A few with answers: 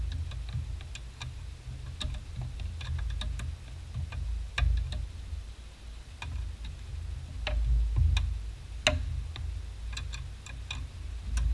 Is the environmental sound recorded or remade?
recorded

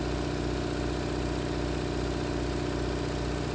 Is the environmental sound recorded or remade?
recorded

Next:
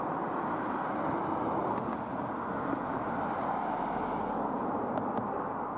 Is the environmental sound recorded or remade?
recorded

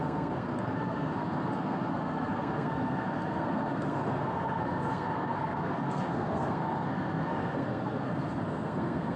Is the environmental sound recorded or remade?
remade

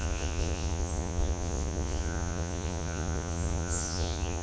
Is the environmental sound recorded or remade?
remade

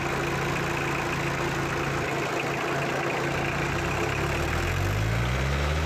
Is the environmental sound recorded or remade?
recorded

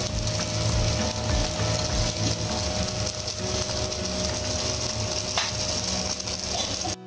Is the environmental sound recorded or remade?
recorded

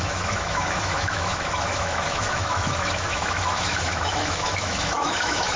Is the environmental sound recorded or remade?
remade